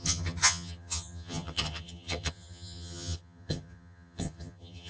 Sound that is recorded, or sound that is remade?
remade